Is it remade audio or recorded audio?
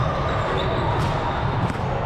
recorded